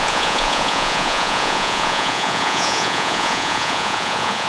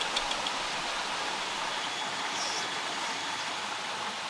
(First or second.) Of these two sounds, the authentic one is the second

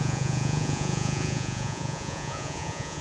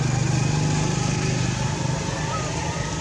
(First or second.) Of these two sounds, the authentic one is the second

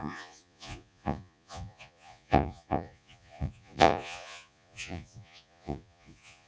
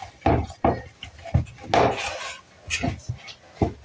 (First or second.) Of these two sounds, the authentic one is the second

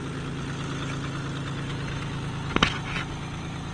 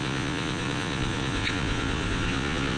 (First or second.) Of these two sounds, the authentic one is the first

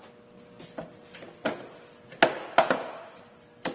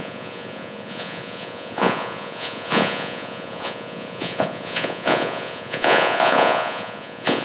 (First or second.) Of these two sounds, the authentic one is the first